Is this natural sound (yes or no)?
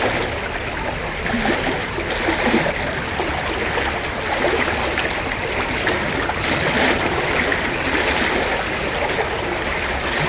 yes